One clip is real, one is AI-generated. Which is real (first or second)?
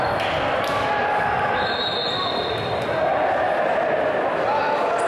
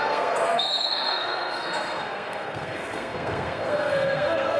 first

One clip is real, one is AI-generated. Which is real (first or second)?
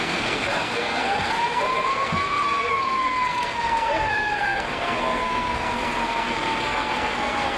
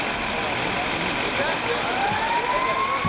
second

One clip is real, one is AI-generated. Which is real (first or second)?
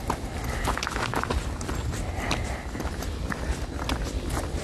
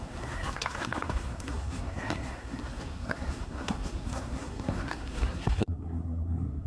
first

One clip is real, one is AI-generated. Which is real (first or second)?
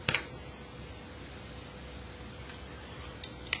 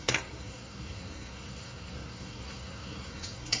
first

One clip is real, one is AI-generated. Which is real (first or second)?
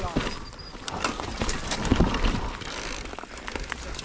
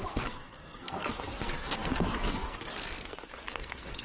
first